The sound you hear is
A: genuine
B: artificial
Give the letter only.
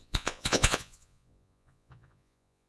B